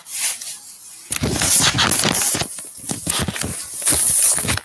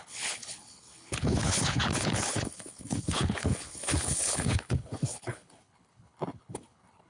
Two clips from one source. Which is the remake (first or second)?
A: second